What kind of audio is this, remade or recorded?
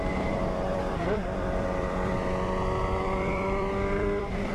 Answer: remade